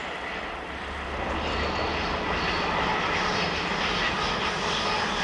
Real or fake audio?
real